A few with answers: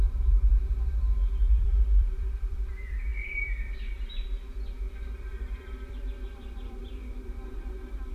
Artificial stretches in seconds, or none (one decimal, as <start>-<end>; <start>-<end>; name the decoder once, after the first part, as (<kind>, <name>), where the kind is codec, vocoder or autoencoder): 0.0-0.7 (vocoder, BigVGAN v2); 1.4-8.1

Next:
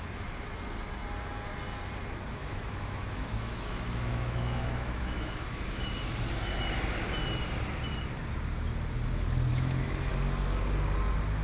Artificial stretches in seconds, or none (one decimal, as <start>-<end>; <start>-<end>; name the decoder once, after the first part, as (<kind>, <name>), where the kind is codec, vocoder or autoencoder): 2.4-5.8 (autoencoder, DAC-VAE); 9.5-10.1

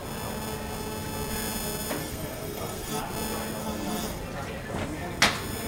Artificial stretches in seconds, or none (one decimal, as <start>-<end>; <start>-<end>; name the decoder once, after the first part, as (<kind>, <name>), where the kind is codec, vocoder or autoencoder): 2.0-3.0 (codec, SNAC); 3.6-4.2

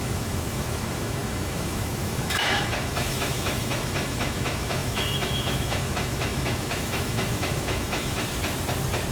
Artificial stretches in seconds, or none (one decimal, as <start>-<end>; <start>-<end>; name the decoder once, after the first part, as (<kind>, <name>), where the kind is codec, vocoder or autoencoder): 0.0-8.4 (autoencoder, DAC-VAE)

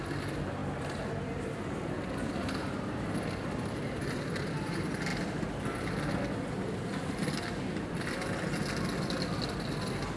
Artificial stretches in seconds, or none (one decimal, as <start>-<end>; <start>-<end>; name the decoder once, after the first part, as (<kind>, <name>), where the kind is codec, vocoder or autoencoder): none

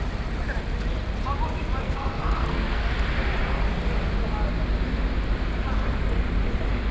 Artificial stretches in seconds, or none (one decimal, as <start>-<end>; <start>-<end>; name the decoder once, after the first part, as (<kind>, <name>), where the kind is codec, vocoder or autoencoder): 1.8-2.8 (codec, SNAC)